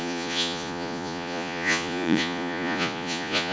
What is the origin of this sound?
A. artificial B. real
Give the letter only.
A